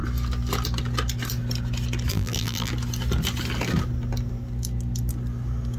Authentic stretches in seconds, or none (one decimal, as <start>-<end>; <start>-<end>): 0.0-2.1; 2.7-5.8